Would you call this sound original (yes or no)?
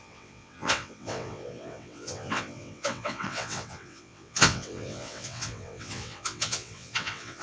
no